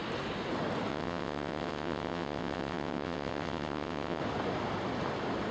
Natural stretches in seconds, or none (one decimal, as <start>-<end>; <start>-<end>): 0.0-0.9; 4.2-5.5